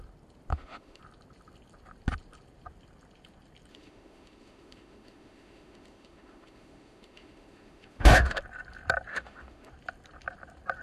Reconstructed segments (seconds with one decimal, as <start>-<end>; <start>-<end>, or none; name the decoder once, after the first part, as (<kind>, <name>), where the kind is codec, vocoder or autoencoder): 0.5-1.0 (autoencoder, DAC-VAE); 3.7-8.4; 9.1-9.7